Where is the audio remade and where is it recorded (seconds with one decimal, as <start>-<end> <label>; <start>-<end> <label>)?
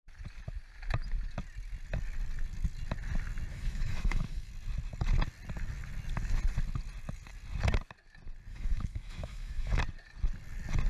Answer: 0.0-3.5 recorded; 3.5-4.5 remade; 4.5-8.5 recorded; 8.5-9.8 remade; 9.8-10.9 recorded